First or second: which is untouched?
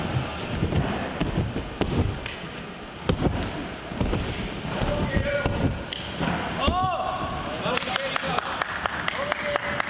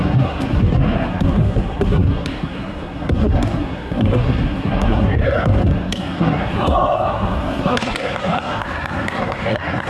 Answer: first